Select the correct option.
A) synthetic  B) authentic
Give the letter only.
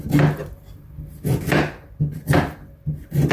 B